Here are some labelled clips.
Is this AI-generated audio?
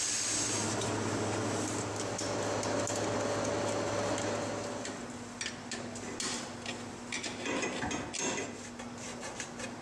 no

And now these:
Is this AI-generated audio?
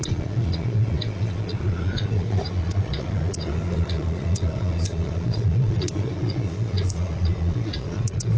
yes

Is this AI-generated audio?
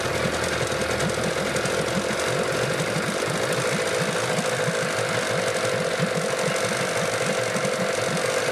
no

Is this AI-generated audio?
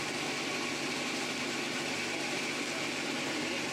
no